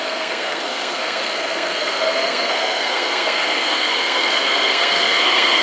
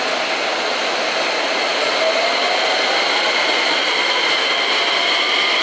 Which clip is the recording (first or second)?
second